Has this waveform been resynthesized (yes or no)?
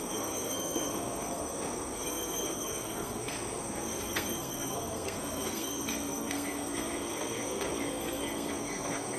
yes